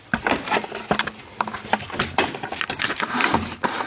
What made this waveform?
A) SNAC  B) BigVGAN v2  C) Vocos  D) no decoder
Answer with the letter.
D